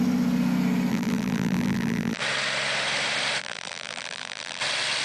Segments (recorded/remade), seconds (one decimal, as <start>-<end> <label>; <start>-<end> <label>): 0.0-0.9 recorded; 0.9-2.2 remade; 2.2-3.4 recorded; 3.4-4.6 remade; 4.6-5.0 recorded